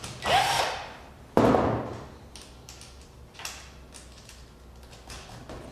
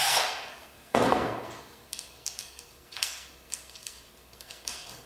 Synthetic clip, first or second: second